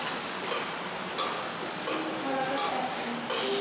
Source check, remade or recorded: recorded